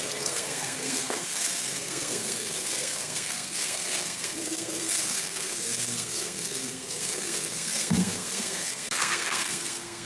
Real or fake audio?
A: fake